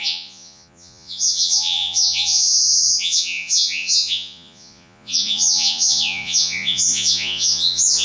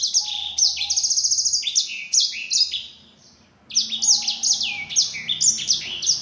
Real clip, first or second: second